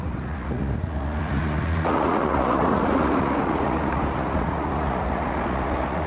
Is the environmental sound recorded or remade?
remade